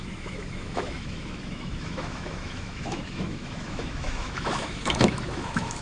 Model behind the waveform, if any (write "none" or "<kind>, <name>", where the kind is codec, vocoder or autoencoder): autoencoder, DAC-VAE